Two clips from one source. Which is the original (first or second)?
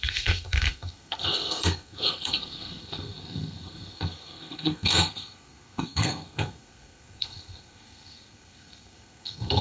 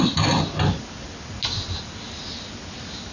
second